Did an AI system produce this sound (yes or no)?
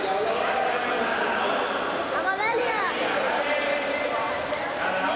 no